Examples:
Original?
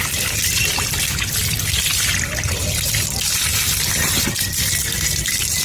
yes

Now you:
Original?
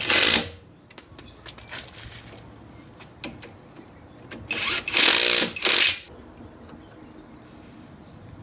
yes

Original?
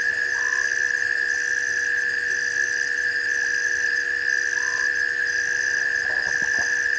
yes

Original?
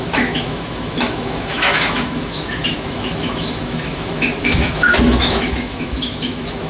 no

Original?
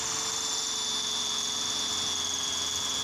yes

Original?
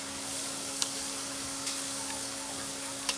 no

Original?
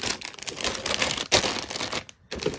yes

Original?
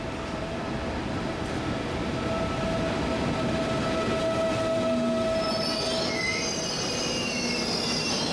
yes